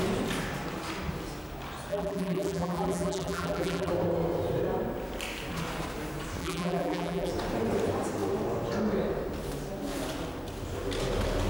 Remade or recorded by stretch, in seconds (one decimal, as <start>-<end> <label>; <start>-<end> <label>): 0.0-1.9 recorded; 1.9-3.9 remade; 3.9-6.4 recorded; 6.4-7.3 remade; 7.3-11.5 recorded